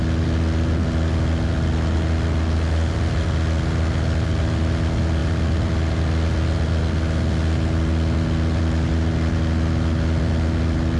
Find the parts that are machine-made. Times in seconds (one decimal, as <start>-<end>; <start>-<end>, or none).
none